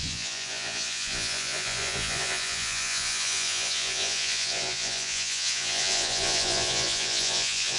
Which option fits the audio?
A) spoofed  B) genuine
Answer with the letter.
A